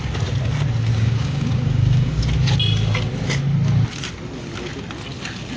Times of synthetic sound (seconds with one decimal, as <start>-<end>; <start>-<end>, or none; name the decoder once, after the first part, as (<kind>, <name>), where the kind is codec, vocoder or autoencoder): 0.9-2.2 (codec, DAC)

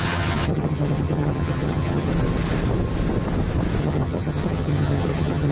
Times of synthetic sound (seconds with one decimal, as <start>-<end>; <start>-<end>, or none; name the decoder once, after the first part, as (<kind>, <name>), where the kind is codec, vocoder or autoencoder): 0.0-2.1 (vocoder, HiFi-GAN); 3.8-5.5

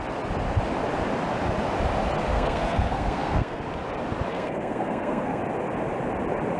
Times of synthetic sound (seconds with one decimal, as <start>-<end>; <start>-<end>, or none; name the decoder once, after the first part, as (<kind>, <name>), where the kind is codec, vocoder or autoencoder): 2.3-3.6 (codec, SNAC); 4.3-5.4

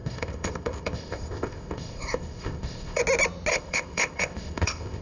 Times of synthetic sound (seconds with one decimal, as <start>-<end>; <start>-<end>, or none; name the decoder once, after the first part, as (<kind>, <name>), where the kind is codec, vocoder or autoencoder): 0.0-3.0 (codec, ZipCodec); 3.5-5.0

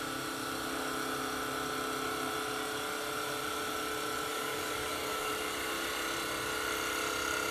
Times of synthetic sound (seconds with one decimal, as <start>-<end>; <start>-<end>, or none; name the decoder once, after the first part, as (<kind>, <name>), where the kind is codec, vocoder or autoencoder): 4.3-5.3 (codec, DAC)

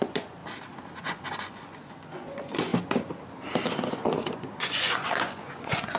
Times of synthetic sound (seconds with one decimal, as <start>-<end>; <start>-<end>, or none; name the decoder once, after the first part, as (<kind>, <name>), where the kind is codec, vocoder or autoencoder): 0.0-0.4 (vocoder, Vocos); 1.0-2.7; 3.7-6.0

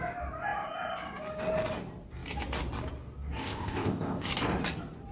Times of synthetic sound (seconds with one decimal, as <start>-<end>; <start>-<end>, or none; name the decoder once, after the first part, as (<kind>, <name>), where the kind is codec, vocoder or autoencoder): 3.4-4.3 (codec, ZipCodec)

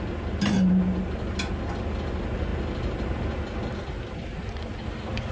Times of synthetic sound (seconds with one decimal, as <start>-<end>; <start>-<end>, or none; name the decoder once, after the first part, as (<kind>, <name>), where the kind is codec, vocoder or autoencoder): none